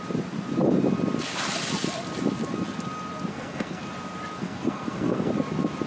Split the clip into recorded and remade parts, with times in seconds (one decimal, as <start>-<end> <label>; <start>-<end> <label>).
0.0-3.3 recorded; 3.3-3.8 remade; 3.8-4.4 recorded; 4.4-5.3 remade; 5.3-5.9 recorded